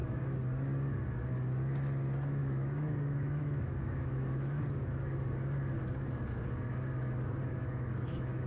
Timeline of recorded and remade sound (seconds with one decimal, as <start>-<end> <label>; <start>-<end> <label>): 0.0-2.4 recorded; 2.4-4.6 remade; 4.6-7.5 recorded; 7.5-8.5 remade